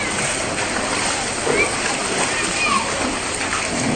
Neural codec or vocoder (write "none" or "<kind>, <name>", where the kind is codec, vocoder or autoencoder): none